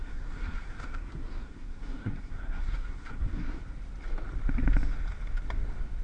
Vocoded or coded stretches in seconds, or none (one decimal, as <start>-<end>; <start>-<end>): 0.0-3.6